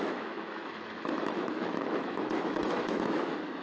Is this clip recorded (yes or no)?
no